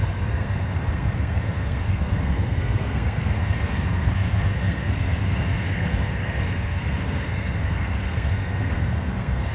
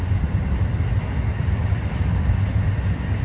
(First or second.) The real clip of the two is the second